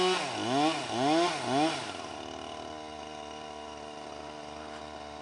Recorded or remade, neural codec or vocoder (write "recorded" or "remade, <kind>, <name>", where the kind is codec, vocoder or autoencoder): recorded